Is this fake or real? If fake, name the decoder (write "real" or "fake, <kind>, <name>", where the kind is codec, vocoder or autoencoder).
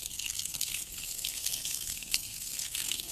fake, codec, SNAC